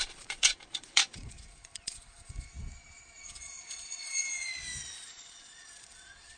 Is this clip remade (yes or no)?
yes